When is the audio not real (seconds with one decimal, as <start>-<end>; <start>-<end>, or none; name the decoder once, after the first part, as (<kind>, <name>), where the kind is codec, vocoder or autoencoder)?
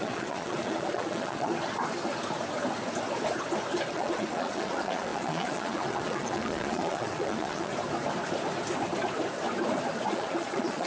0.0-1.5 (vocoder, Vocos); 3.9-7.7; 10.1-10.9